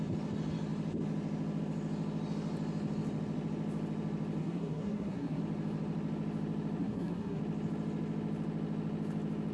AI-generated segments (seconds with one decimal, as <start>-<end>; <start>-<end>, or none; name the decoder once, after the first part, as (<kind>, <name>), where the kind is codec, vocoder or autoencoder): 4.4-5.4 (codec, SNAC); 6.8-7.4